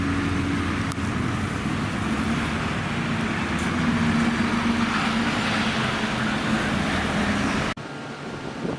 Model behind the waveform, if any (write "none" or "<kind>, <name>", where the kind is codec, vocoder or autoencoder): none